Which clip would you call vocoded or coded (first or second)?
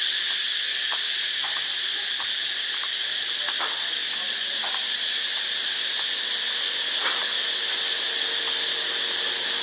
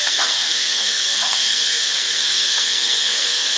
second